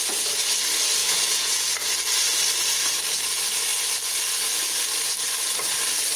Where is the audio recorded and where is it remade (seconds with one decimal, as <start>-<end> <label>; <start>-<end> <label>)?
0.0-1.0 recorded; 1.0-1.7 remade; 1.7-6.2 recorded